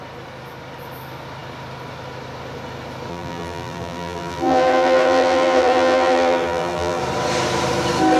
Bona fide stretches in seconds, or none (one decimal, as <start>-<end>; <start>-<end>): 0.0-3.1; 7.0-8.2